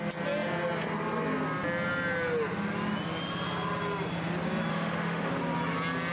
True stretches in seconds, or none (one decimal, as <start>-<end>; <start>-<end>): 0.0-4.7; 5.3-6.1